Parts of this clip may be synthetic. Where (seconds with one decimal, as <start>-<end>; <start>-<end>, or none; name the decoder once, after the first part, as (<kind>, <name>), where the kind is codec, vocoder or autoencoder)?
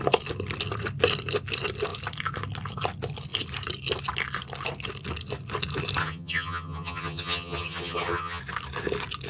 6.0-8.4 (vocoder, HiFi-GAN)